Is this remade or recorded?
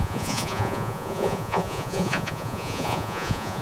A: remade